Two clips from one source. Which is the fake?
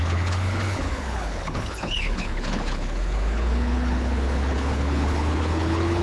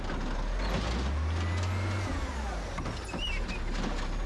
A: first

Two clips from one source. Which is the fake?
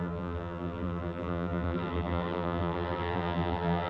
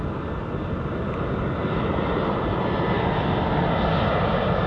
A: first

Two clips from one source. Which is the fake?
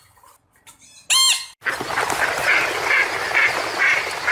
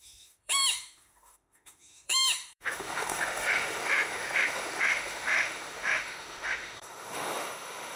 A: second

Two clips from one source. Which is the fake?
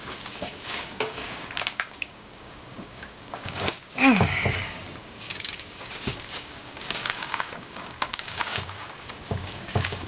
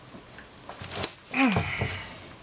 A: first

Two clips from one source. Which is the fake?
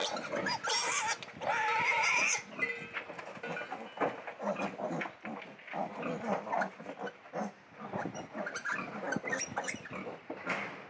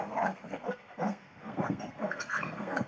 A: second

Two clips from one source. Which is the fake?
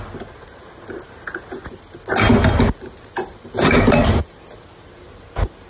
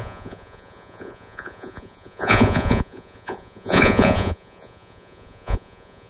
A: second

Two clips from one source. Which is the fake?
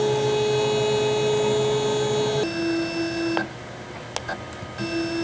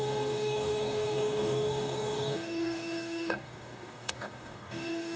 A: second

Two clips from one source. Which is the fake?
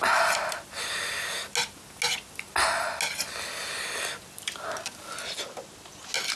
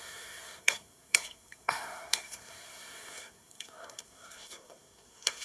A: second